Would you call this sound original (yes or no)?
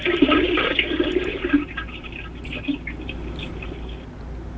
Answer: yes